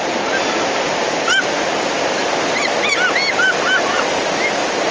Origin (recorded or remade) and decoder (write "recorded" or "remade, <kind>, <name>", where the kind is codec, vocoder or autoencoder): recorded